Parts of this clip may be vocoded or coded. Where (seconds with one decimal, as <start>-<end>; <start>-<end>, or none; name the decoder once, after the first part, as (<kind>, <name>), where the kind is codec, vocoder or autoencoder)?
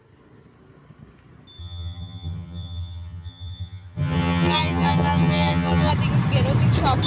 1.6-5.9 (vocoder, HiFi-GAN)